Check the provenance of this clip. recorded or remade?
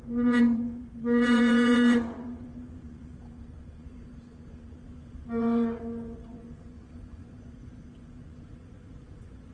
remade